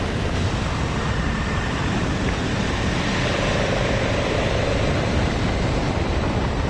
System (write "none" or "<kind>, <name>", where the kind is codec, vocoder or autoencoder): vocoder, BigVGAN v2